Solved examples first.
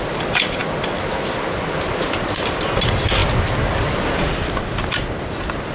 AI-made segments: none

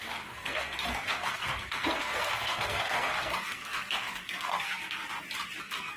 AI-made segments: 0.0-5.0 (codec, SNAC); 5.6-6.0